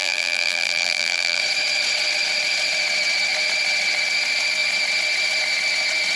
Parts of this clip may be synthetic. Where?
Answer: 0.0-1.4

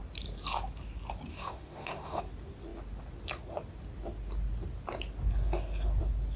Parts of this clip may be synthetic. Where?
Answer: 1.3-2.2

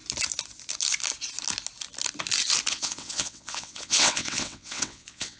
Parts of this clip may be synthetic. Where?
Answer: 2.7-5.4

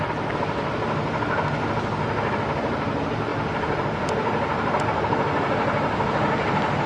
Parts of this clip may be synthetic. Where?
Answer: none

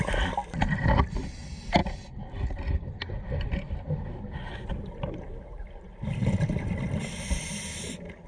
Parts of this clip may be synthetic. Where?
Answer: none

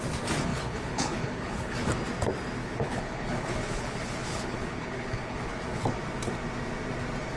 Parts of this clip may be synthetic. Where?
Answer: 0.5-1.9; 2.6-5.8

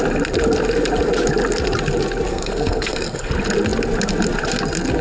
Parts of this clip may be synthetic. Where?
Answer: 2.3-3.3